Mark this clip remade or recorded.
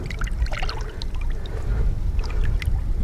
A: recorded